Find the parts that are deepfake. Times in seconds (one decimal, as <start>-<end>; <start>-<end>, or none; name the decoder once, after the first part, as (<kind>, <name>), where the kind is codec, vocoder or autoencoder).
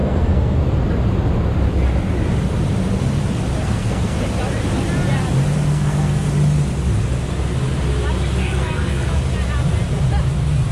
0.0-0.6 (codec, SNAC); 3.6-4.2; 5.7-6.3; 8.4-9.1